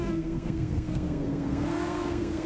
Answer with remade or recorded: remade